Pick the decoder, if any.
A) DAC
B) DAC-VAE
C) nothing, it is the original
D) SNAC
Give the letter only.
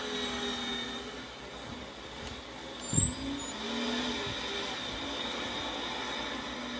C